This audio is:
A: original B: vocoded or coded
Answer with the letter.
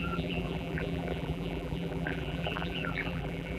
B